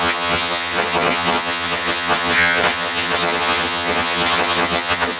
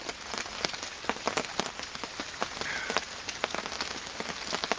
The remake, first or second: first